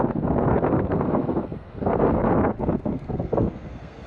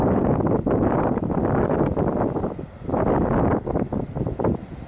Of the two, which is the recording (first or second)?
second